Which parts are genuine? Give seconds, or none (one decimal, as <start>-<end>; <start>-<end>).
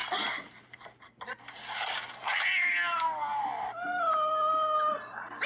2.2-5.5